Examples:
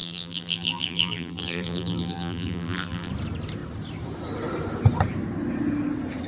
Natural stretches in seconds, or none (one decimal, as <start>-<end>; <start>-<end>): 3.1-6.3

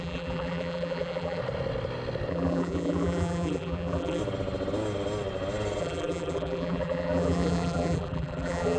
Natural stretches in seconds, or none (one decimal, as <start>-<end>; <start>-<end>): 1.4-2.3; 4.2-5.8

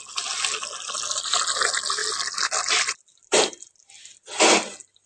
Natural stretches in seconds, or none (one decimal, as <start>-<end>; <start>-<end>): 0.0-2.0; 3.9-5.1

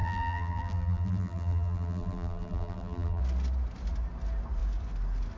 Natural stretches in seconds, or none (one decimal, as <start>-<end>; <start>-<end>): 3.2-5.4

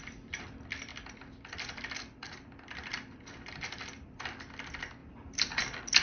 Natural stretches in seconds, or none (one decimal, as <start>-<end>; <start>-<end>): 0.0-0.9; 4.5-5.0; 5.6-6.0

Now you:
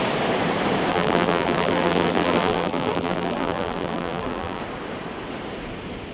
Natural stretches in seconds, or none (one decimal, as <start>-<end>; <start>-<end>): 0.0-0.9; 4.6-6.1

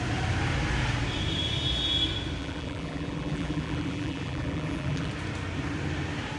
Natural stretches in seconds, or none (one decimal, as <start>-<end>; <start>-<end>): 0.0-2.4; 5.1-6.4